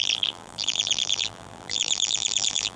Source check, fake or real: fake